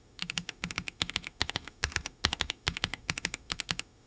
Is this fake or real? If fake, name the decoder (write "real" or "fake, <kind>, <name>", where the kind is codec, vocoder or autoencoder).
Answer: fake, autoencoder, DAC-VAE